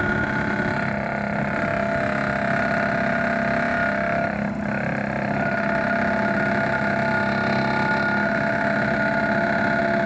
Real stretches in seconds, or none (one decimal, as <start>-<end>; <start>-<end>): 0.0-10.1